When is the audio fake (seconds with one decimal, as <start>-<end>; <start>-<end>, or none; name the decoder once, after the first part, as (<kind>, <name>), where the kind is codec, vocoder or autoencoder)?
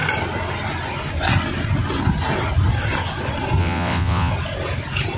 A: 3.6-4.3 (vocoder, WaveNeXt)